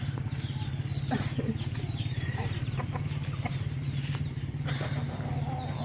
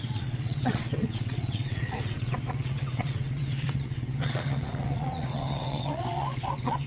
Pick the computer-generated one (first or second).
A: second